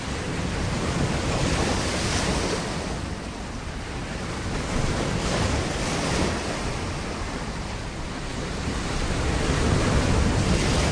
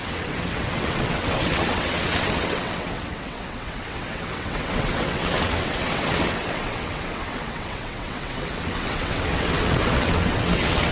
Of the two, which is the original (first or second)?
first